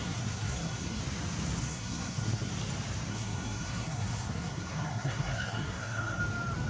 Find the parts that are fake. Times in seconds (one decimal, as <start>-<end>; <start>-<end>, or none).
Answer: 0.0-1.0; 1.6-2.5; 3.1-6.2